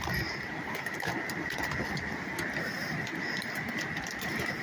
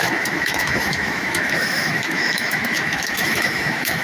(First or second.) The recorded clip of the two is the first